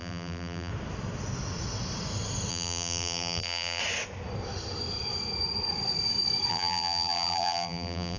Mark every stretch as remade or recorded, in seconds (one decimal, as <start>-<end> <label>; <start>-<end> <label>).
0.0-0.7 remade; 0.7-2.5 recorded; 2.5-3.8 remade; 3.8-6.5 recorded; 6.5-8.2 remade